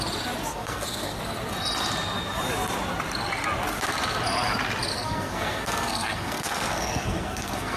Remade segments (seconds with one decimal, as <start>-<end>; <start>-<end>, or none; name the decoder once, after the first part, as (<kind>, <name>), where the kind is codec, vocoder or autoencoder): 0.5-1.2 (codec, SNAC); 4.9-7.8